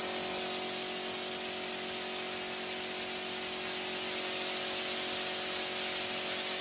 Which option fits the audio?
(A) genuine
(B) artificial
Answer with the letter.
A